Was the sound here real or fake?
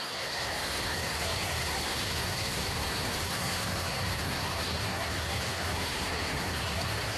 fake